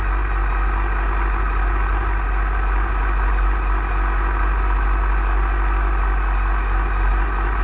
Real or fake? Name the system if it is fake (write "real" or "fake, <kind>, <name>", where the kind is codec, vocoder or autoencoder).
real